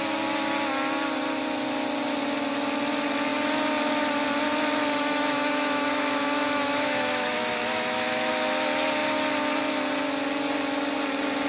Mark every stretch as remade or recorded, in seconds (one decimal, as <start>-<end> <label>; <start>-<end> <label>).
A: 0.0-4.9 recorded; 4.9-8.3 remade; 8.3-11.5 recorded